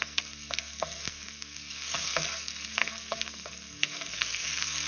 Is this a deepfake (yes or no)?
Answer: yes